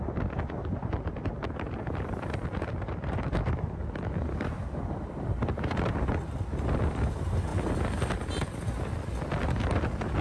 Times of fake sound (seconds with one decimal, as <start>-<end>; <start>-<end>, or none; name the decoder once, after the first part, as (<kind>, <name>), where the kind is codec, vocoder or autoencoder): 0.8-6.1 (vocoder, BigVGAN v2)